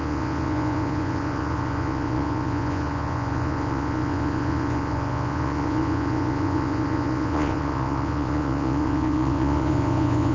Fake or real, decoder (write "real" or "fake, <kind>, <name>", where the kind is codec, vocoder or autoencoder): fake, vocoder, Vocos